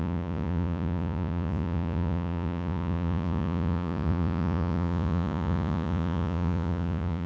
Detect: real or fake fake